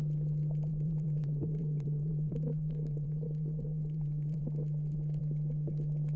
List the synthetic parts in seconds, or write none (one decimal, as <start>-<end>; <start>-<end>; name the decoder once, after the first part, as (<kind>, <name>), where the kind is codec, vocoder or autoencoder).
0.7-4.4 (vocoder, BigVGAN v2)